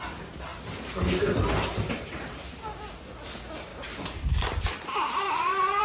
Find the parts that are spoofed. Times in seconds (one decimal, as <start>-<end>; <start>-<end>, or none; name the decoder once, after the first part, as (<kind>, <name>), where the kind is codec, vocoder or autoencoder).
3.7-5.8 (vocoder, BigVGAN v2)